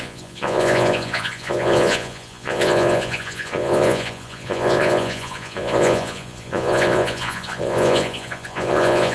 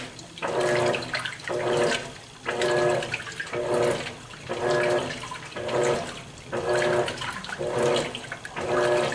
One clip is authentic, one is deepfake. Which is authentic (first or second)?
second